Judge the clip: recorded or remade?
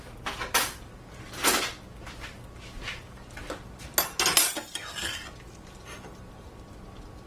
recorded